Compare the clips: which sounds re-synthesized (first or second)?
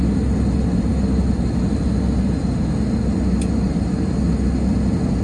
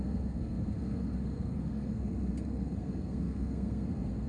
second